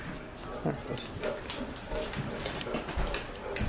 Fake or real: real